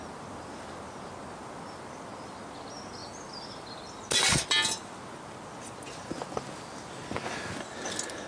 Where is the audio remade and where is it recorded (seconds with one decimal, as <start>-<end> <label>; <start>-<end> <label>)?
0.0-8.3 recorded

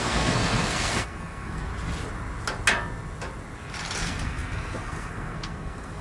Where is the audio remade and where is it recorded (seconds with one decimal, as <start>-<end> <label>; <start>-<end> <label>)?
0.0-1.7 remade; 1.7-4.0 recorded; 4.0-6.0 remade

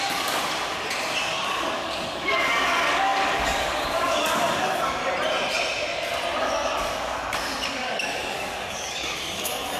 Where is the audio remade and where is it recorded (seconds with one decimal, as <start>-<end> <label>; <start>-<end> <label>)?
0.0-0.4 remade; 0.4-1.2 recorded; 1.2-5.0 remade; 5.0-6.4 recorded; 6.4-9.8 remade